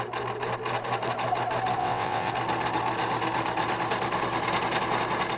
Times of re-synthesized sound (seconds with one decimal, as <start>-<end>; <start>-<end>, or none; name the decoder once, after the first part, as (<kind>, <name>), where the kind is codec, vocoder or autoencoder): 1.8-2.3 (vocoder, WaveNeXt)